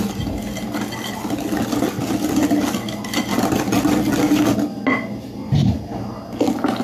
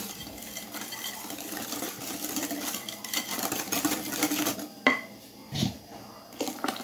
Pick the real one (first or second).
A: first